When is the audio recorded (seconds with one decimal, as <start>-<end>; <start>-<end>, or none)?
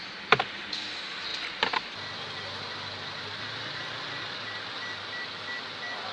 0.0-6.1